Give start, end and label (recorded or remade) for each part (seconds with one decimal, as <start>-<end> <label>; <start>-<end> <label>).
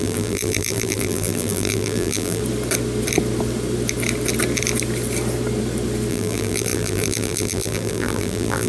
0.0-2.4 remade; 2.4-6.1 recorded; 6.1-8.7 remade